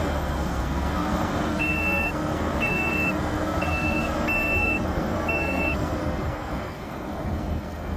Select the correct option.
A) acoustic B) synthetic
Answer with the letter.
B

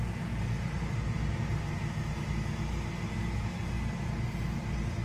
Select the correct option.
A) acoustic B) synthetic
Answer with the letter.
A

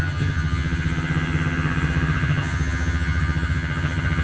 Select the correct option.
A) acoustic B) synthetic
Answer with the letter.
B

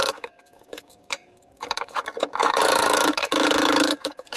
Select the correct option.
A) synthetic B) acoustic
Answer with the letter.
A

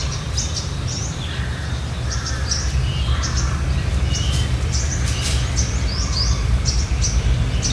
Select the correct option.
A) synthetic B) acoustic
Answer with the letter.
A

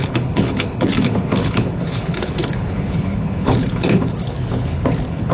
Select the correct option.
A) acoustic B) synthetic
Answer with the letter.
B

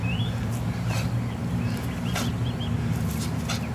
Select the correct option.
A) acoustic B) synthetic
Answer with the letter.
A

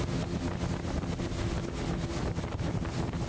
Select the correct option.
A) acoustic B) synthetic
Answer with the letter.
A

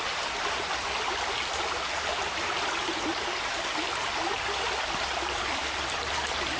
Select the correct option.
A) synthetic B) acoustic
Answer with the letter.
B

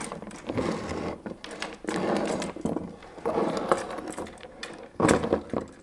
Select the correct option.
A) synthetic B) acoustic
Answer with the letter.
B